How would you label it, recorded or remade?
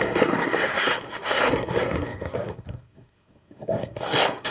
remade